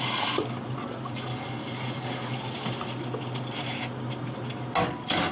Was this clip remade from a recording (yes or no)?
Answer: no